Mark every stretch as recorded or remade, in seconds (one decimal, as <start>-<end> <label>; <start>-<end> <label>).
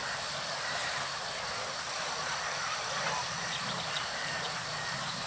0.0-5.3 remade